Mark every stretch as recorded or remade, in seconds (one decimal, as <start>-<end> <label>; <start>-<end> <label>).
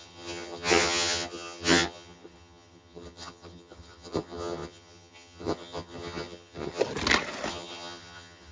0.0-6.8 remade; 6.8-7.5 recorded; 7.5-8.5 remade